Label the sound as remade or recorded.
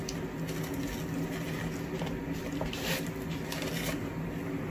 recorded